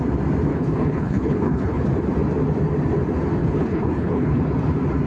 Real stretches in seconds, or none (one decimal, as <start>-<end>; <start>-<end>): 0.0-0.5; 1.8-3.4; 4.4-5.1